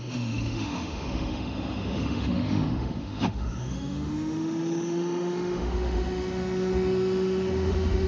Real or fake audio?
fake